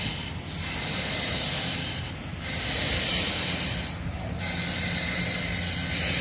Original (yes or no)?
yes